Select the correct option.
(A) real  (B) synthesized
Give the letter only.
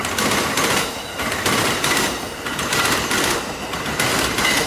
A